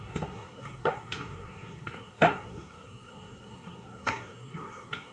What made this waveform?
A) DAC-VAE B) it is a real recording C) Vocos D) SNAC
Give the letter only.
D